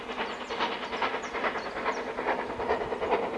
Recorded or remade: recorded